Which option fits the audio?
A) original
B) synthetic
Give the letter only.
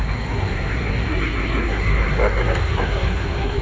B